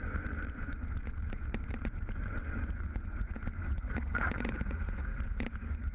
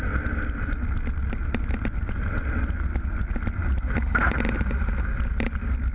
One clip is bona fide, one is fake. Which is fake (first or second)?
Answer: first